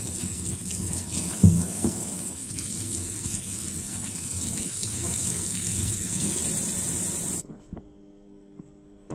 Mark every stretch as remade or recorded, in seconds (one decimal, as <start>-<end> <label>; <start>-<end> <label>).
0.0-6.4 remade; 6.4-7.4 recorded; 7.4-9.1 remade